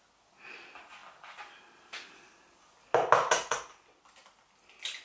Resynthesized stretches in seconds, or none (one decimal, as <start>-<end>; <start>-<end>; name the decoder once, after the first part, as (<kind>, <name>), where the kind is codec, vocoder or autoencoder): none